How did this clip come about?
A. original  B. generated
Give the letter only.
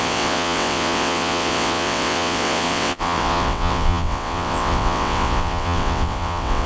B